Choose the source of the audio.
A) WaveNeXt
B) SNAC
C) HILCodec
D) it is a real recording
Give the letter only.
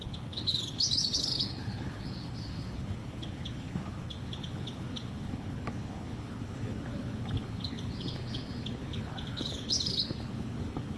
C